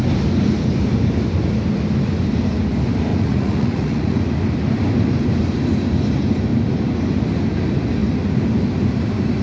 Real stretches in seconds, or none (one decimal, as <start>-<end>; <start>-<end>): 0.0-3.1; 4.2-9.4